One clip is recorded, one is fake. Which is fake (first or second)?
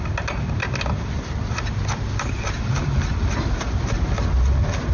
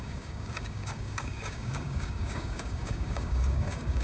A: second